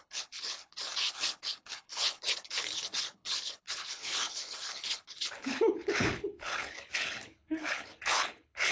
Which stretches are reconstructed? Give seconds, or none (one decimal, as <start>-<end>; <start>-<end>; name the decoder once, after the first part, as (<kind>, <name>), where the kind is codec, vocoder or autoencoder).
0.0-8.7 (codec, HILCodec)